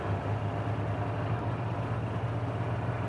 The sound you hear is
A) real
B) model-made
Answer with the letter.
A